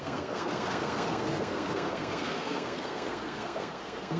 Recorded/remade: remade